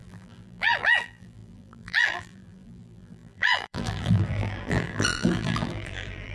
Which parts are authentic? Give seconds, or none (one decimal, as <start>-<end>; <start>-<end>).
none